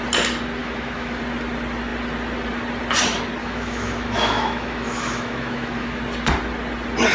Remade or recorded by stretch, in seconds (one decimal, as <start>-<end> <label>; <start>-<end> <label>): 0.0-0.6 recorded; 0.6-1.2 remade; 1.2-3.4 recorded; 3.4-6.0 remade; 6.0-7.1 recorded